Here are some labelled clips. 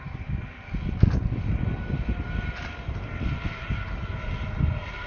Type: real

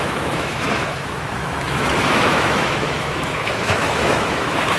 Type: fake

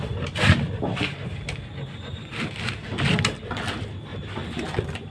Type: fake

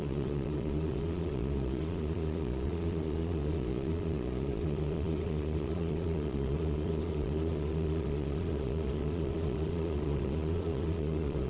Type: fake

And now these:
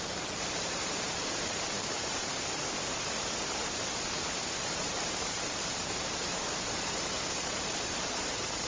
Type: fake